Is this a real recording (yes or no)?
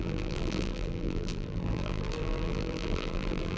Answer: no